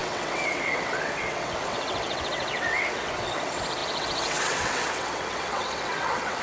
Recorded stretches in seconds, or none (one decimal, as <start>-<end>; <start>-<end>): none